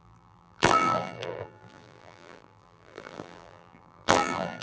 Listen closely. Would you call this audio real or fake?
fake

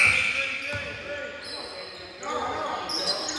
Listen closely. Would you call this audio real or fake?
real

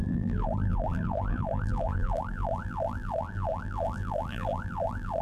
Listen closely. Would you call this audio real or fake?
fake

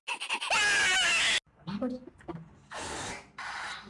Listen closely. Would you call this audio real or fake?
real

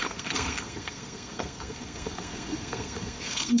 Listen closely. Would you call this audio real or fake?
fake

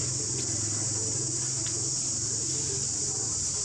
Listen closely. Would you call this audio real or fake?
real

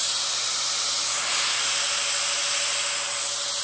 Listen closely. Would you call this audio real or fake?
real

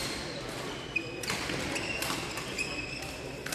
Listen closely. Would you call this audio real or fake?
real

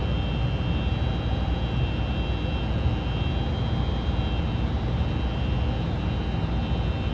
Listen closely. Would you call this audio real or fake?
real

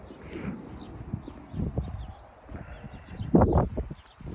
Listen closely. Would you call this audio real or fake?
real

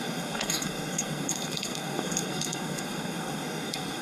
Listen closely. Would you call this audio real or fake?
fake